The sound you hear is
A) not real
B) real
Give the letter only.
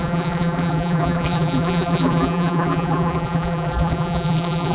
A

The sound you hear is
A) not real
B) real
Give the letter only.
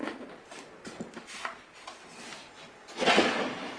B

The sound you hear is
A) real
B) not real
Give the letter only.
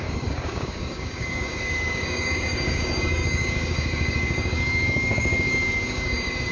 B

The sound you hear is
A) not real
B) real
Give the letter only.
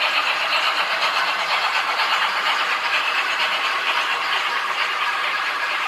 A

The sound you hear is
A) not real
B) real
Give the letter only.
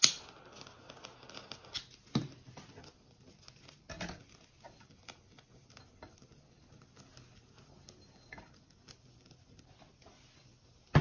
B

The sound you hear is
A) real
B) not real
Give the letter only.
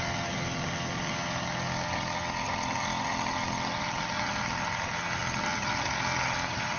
B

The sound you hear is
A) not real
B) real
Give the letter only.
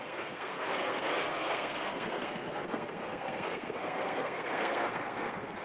A